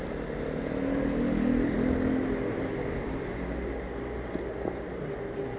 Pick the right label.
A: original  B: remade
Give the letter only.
A